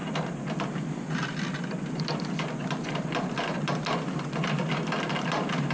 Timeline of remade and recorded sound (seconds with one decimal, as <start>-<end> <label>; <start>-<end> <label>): 0.0-5.7 recorded